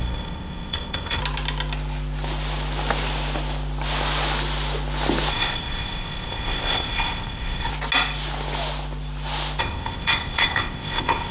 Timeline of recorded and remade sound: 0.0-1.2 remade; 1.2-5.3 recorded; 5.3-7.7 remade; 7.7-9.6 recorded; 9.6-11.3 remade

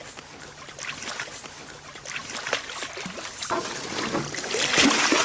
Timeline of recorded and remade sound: 0.0-5.2 recorded